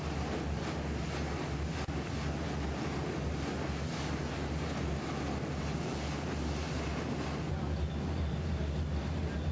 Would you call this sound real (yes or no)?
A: yes